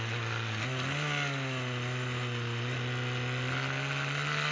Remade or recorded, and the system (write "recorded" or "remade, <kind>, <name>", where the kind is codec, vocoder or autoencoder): recorded